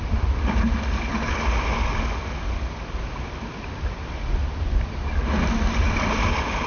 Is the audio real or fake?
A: real